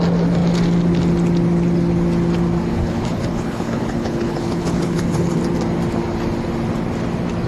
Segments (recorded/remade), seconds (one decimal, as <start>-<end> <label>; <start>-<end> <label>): 0.0-2.7 recorded; 2.7-5.4 remade; 5.4-7.5 recorded

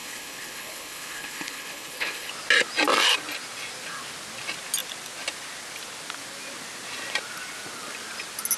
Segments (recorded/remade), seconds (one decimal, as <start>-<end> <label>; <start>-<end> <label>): 0.0-2.3 remade; 2.3-8.6 recorded

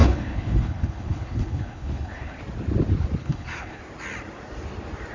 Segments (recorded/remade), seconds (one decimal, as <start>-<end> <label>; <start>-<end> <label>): 0.0-2.4 remade; 2.4-3.2 recorded; 3.2-3.8 remade; 3.8-5.1 recorded

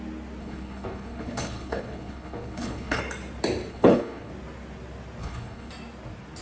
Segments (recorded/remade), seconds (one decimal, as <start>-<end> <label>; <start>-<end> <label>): 0.0-0.4 recorded; 0.4-3.0 remade; 3.0-3.7 recorded; 3.7-4.3 remade; 4.3-5.2 recorded; 5.2-5.7 remade; 5.7-6.4 recorded

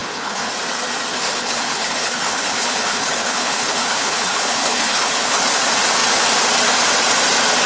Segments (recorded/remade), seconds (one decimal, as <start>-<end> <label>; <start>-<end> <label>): 0.0-0.5 remade; 0.5-1.1 recorded; 1.1-5.4 remade; 5.4-7.7 recorded

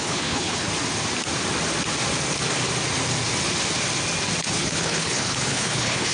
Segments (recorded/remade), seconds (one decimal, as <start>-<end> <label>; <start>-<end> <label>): 0.0-0.7 remade; 0.7-4.4 recorded; 4.4-6.1 remade